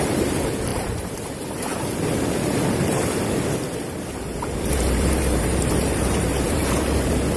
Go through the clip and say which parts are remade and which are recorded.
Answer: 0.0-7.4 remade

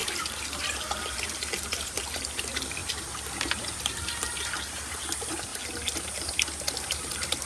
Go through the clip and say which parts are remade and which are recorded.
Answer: 0.0-5.5 remade; 5.5-6.7 recorded; 6.7-7.5 remade

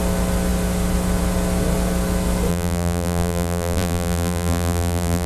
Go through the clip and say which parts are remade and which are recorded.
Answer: 0.0-2.5 recorded; 2.5-5.3 remade

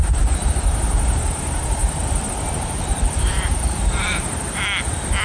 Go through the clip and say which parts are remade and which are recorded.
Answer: 0.0-1.8 recorded; 1.8-4.6 remade; 4.6-5.2 recorded

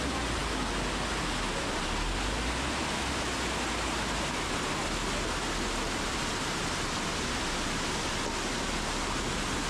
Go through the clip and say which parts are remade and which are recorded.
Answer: 0.0-9.7 recorded

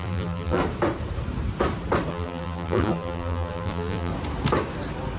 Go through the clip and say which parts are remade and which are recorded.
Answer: 0.0-0.6 remade; 0.6-2.1 recorded; 2.1-4.1 remade; 4.1-5.2 recorded